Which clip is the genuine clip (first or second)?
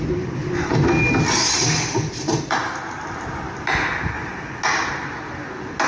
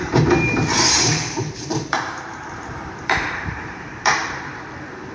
first